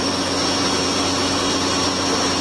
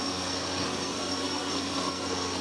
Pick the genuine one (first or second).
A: first